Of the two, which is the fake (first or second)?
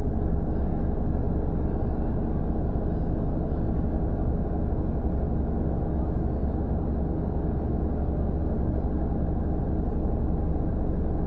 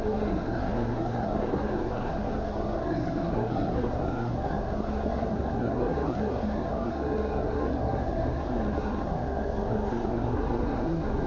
second